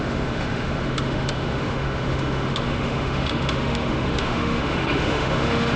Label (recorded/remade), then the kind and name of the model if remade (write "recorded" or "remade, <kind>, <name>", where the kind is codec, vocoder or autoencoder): remade, autoencoder, DAC-VAE